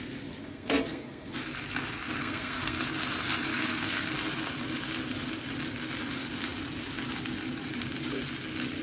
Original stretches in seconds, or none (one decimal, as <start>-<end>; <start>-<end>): 0.0-0.4; 1.3-2.2; 2.8-3.5; 4.1-8.8